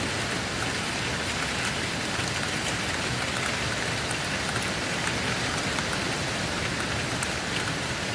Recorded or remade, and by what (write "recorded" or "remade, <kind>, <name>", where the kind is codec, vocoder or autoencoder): recorded